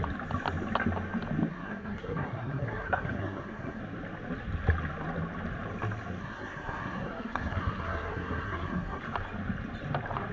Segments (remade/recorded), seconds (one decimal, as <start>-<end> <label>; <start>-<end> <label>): 0.0-1.5 recorded; 1.5-3.8 remade; 3.8-6.2 recorded; 6.2-9.0 remade; 9.0-10.3 recorded